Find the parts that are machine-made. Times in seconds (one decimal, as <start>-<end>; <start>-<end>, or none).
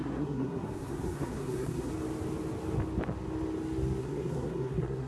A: 0.0-1.9; 4.0-5.1